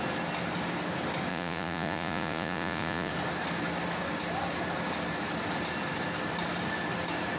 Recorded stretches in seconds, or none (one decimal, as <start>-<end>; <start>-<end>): 0.0-1.3; 3.1-7.4